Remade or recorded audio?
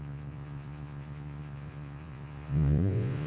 remade